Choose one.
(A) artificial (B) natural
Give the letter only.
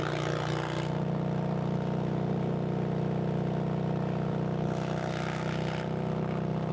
B